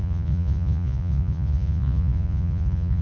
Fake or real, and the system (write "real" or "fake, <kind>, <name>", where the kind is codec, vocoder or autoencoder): fake, vocoder, Vocos